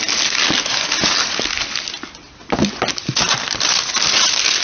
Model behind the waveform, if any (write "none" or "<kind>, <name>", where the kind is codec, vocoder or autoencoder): none